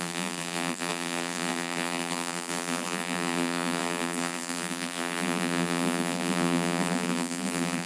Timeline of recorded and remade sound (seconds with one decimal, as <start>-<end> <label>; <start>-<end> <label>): 0.0-7.9 remade